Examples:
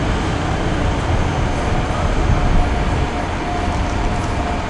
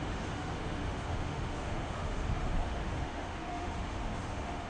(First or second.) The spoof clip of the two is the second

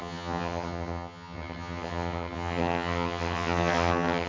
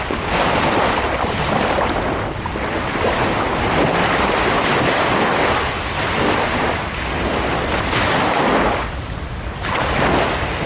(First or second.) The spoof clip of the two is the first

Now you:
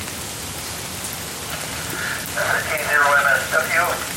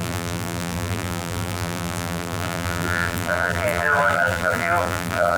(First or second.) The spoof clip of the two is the second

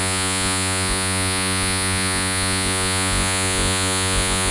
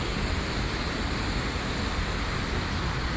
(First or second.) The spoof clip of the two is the first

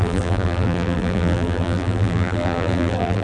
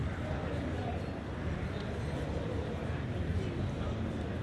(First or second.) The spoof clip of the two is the first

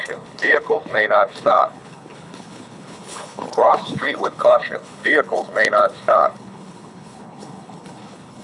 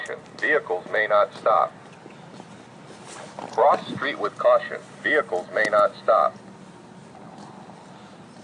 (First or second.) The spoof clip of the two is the first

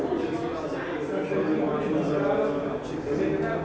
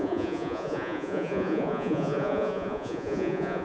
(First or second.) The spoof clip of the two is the second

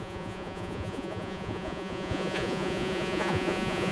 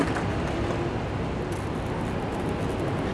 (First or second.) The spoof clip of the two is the first